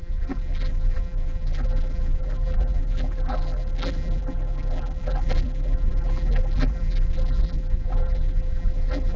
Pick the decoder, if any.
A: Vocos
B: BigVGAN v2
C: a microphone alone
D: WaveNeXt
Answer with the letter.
B